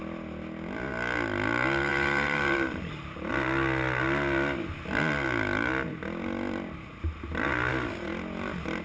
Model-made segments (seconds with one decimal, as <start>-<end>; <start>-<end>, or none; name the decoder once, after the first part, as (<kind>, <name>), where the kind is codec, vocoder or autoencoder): 1.9-3.3 (vocoder, BigVGAN v2)